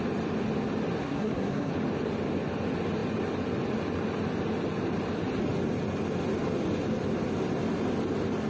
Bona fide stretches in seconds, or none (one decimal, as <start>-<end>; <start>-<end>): 0.0-1.0; 1.7-8.5